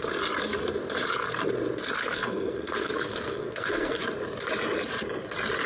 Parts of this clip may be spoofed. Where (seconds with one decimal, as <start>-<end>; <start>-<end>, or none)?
2.0-4.0